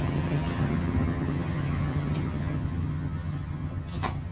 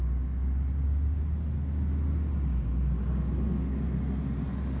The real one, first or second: second